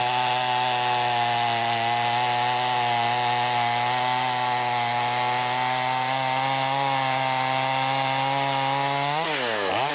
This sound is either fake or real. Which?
real